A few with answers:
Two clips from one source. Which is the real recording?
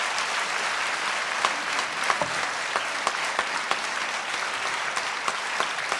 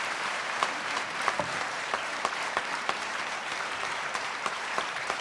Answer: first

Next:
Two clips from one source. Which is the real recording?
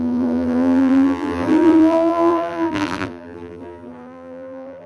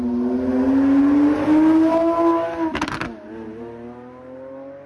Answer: second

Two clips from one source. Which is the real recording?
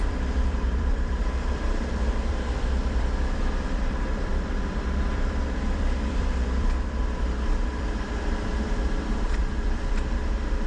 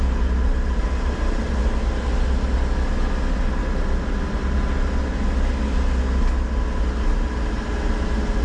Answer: second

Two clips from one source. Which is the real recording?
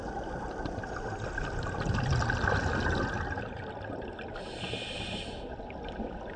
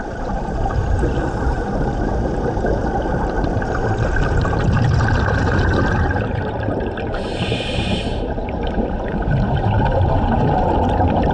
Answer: first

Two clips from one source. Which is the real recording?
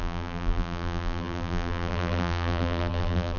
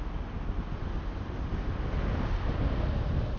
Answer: second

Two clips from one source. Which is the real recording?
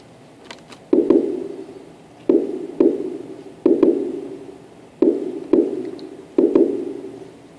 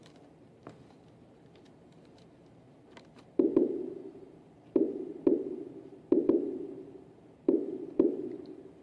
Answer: first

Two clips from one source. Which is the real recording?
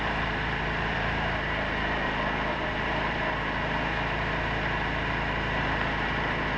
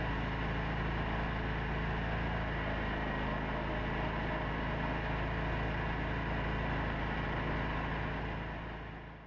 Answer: second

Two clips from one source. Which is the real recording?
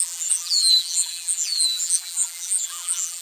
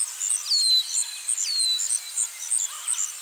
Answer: second